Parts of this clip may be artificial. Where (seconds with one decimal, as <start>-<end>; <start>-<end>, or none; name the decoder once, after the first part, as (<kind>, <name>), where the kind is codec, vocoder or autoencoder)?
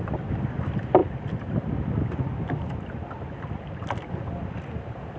none